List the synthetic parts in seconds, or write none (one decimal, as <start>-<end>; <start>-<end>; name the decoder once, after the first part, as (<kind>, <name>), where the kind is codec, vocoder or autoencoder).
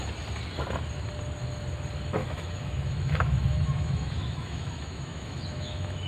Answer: 2.2-6.1 (autoencoder, DAC-VAE)